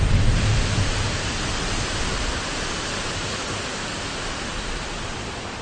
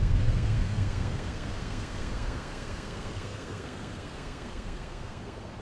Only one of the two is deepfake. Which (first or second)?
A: second